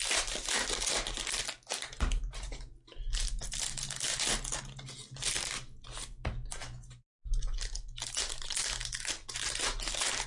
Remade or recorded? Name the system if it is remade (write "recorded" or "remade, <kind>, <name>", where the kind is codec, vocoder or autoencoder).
recorded